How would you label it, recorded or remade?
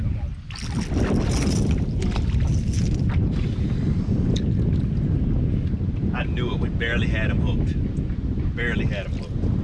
recorded